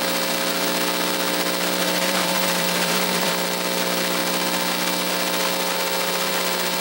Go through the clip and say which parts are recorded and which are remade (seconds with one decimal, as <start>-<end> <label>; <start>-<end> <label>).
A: 0.0-1.8 recorded; 1.8-3.3 remade; 3.3-6.8 recorded